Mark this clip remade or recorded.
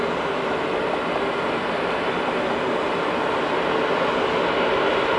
recorded